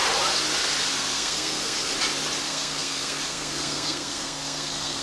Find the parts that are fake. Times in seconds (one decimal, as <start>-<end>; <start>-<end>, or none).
0.9-1.9; 2.4-5.0